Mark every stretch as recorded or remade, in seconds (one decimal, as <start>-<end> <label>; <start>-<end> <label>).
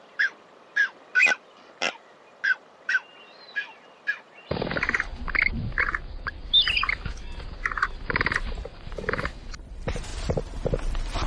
0.0-5.1 remade; 5.1-8.2 recorded; 8.2-10.1 remade; 10.1-10.9 recorded; 10.9-11.3 remade